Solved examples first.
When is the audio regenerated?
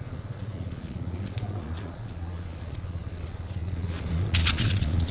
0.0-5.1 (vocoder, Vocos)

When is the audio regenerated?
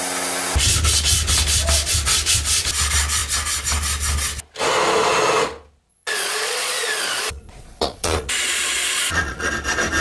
5.9-9.5 (vocoder, Vocos)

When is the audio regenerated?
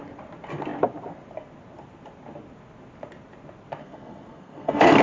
3.8-5.0 (codec, SNAC)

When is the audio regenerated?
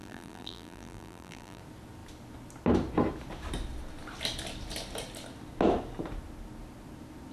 0.0-1.6 (vocoder, BigVGAN v2)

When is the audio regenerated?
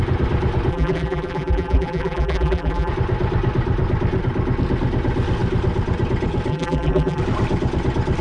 0.7-2.9 (vocoder, BigVGAN v2); 6.5-7.2